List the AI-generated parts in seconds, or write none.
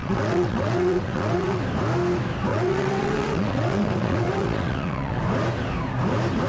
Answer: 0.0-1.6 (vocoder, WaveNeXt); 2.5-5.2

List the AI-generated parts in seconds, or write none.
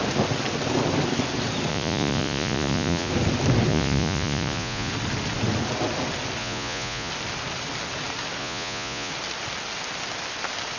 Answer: 1.7-3.1 (vocoder, Vocos); 3.7-4.9; 6.4-7.1; 8.4-9.1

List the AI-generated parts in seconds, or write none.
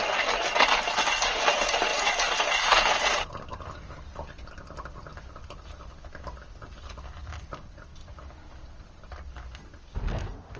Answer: 1.9-3.3 (vocoder, BigVGAN v2)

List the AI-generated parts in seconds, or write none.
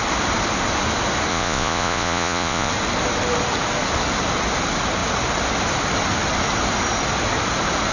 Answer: 1.3-2.7 (vocoder, Vocos)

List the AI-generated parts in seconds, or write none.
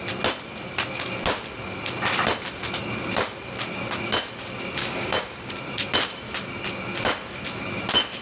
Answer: 4.8-5.5 (codec, DAC)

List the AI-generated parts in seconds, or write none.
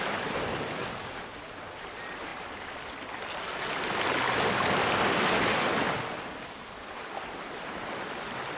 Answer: none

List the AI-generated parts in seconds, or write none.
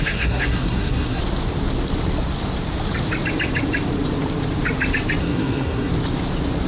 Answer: 0.0-1.2 (codec, SNAC); 5.2-5.9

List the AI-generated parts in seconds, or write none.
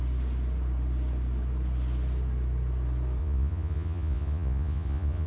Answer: 3.2-5.3 (vocoder, Vocos)